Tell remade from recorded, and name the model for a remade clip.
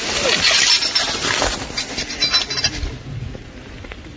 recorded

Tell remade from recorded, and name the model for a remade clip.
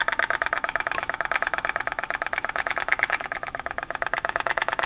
remade, autoencoder, DAC-VAE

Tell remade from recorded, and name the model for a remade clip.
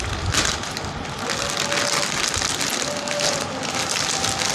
recorded